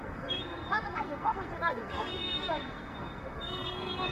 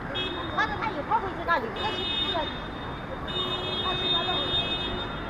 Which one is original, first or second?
second